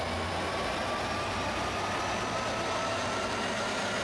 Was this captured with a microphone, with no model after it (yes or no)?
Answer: yes